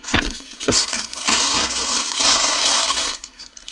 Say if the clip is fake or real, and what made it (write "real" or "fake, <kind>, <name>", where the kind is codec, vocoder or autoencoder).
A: fake, codec, SNAC